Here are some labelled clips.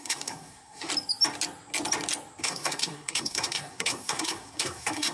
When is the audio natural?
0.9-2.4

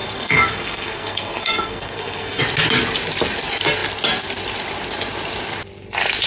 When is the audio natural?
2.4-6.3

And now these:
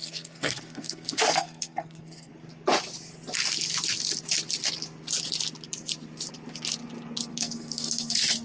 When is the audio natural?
2.3-7.3

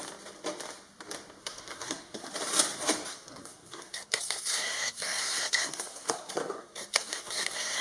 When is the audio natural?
0.0-1.4; 2.3-3.1

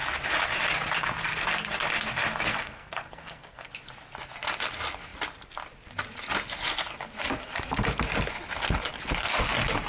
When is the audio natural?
0.0-2.5; 3.7-9.9